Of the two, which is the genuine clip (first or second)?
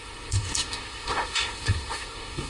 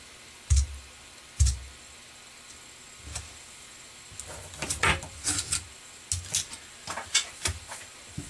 second